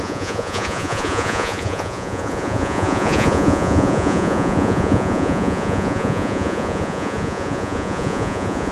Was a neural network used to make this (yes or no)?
yes